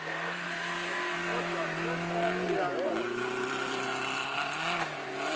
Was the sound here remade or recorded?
recorded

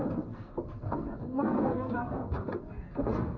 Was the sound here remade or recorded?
remade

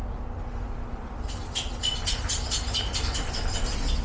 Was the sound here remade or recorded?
recorded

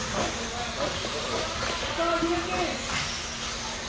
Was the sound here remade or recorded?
recorded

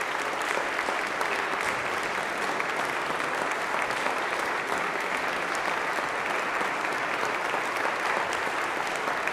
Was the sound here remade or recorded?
recorded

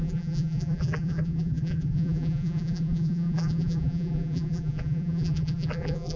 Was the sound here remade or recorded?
remade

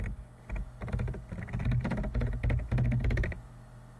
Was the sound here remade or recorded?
recorded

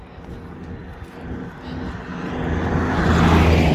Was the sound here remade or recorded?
recorded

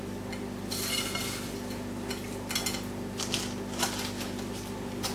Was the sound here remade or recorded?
recorded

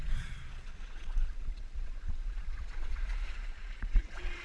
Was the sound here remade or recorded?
remade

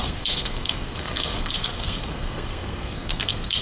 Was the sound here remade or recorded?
remade